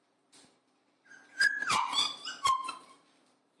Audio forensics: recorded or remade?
remade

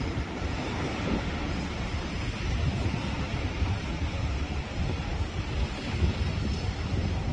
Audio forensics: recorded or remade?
recorded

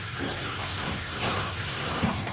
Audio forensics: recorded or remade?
remade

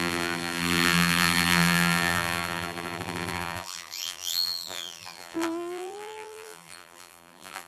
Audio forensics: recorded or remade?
remade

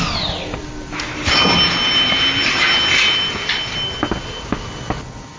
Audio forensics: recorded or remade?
recorded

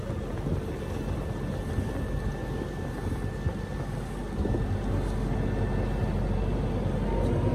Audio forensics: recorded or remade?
recorded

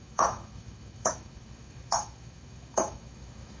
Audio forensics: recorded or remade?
remade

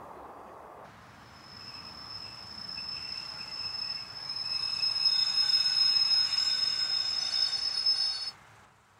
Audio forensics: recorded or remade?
recorded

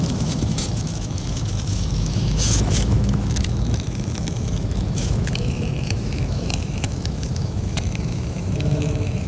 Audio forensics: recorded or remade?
remade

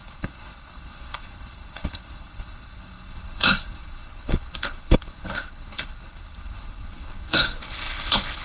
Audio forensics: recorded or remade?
remade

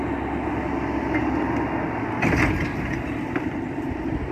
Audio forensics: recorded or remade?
recorded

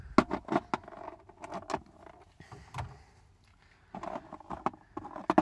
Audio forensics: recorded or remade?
recorded